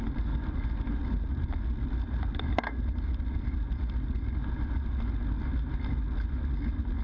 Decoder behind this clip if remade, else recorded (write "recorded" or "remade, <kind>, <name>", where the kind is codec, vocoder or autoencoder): recorded